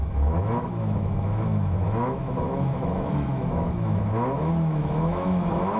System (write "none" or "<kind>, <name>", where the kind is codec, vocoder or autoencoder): autoencoder, DAC-VAE